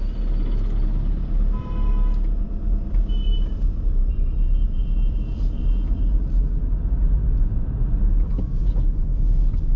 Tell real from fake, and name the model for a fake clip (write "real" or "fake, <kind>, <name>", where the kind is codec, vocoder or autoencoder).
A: real